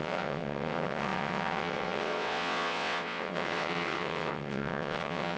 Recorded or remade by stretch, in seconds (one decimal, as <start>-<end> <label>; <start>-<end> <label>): 0.0-5.4 remade